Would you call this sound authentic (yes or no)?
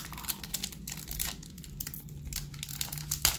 yes